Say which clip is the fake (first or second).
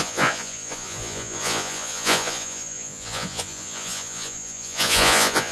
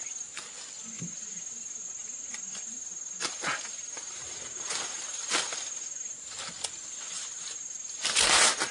first